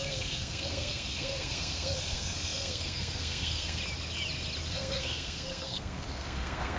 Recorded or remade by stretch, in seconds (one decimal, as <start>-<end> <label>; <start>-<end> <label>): 0.0-3.8 remade; 3.8-4.7 recorded; 4.7-6.8 remade